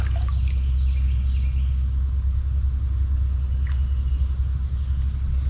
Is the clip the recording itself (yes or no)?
yes